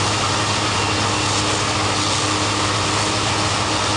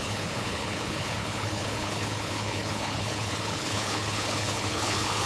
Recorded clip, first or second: first